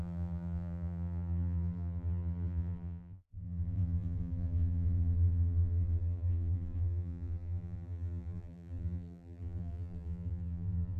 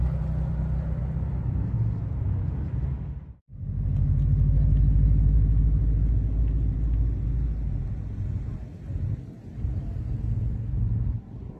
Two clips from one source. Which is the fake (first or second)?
first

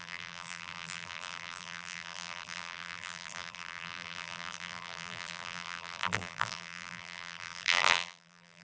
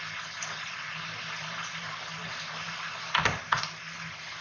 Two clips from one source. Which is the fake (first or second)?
first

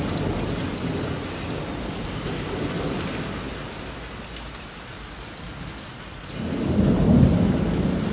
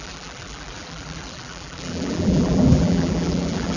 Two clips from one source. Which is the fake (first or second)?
second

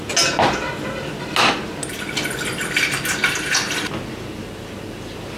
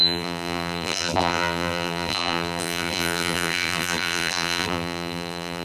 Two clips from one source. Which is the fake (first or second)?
second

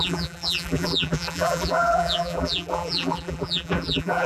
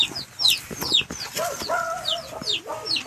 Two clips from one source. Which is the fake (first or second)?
first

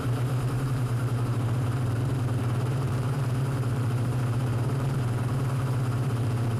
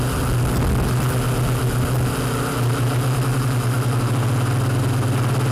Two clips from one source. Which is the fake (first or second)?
first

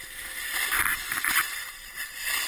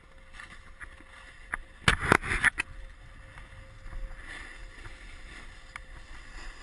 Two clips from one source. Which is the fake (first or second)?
first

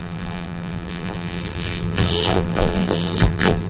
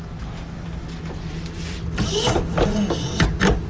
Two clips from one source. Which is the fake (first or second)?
first